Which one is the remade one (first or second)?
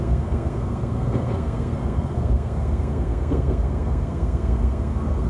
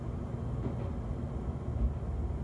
first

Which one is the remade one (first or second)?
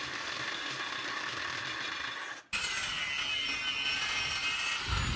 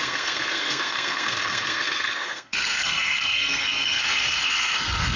second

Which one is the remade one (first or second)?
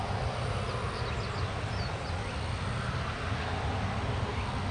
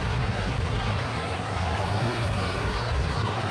second